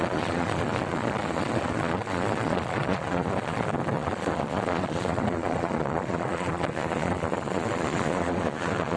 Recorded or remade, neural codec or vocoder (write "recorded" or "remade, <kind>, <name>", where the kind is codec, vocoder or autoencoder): remade, vocoder, Vocos